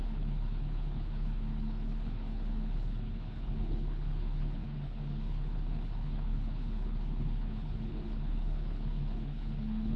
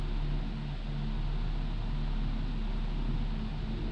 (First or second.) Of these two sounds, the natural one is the second